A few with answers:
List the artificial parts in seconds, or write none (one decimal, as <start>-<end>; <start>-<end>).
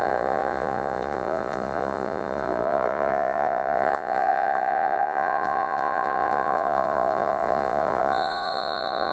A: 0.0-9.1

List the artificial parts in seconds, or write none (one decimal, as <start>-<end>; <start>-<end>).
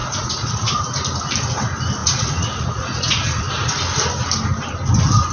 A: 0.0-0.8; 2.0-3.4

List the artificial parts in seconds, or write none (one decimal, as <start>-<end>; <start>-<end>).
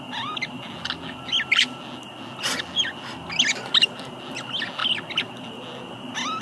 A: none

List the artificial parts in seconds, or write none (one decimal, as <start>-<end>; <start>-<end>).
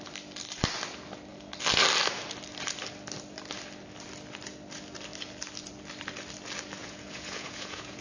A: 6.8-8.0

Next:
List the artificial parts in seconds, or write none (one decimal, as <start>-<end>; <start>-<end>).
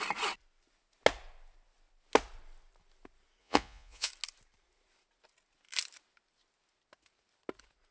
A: 3.4-4.1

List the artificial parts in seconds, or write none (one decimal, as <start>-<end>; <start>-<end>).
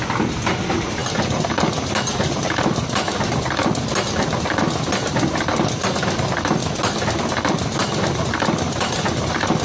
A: none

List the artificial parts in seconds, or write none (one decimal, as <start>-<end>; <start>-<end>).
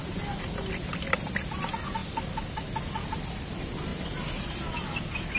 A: none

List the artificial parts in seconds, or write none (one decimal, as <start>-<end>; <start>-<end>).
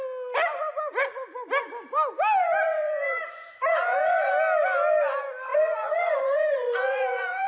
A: 2.4-4.3; 5.5-7.5